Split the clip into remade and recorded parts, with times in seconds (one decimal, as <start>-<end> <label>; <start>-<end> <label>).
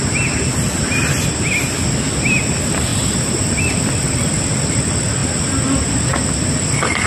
0.0-7.1 recorded